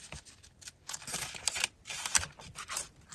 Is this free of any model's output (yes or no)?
yes